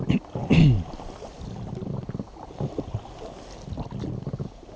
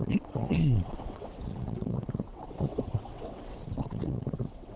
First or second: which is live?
first